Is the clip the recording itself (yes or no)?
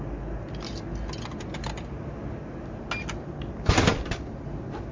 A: yes